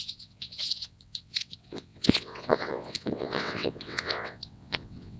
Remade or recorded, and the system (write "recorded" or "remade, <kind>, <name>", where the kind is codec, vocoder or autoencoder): remade, vocoder, WaveNeXt